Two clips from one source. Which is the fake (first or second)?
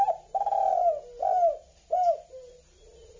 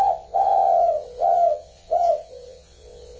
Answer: second